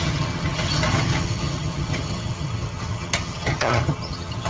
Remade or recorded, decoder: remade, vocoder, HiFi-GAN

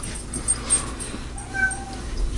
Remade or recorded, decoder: remade, vocoder, BigVGAN v2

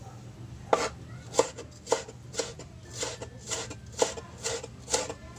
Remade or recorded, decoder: recorded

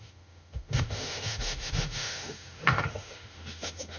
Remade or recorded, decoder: remade, autoencoder, DAC-VAE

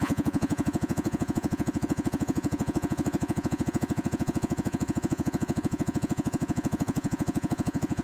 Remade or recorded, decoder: remade, vocoder, Vocos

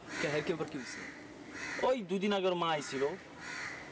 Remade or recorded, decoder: recorded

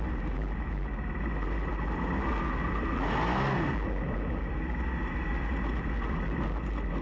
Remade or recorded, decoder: recorded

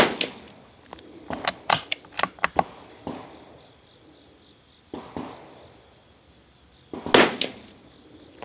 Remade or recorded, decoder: recorded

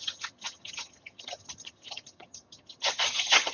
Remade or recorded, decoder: remade, vocoder, HiFi-GAN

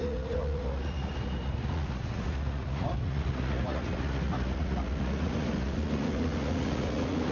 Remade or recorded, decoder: remade, vocoder, Vocos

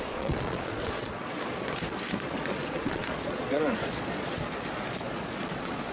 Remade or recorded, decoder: remade, vocoder, Vocos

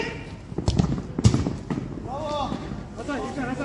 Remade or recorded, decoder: recorded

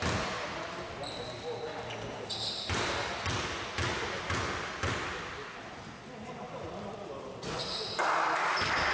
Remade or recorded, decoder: recorded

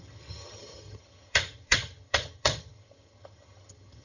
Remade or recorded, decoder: remade, vocoder, HiFi-GAN